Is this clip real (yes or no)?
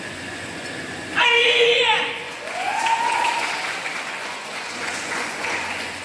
no